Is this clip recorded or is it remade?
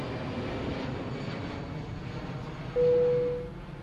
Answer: recorded